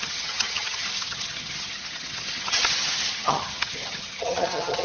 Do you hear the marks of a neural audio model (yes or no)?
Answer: yes